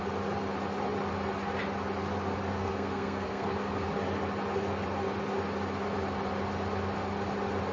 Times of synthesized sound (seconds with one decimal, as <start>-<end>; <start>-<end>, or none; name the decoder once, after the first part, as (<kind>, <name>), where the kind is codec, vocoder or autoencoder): 2.6-3.9 (codec, SNAC)